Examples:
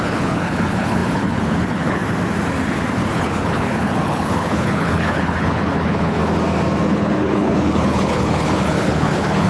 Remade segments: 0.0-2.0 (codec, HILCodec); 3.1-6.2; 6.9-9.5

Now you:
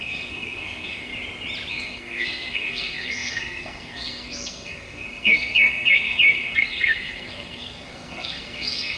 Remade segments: 0.0-1.1 (codec, SNAC); 1.7-9.0